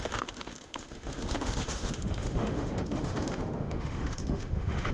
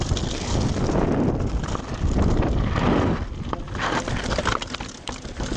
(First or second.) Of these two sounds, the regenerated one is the first